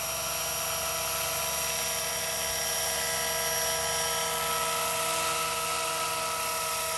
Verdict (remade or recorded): recorded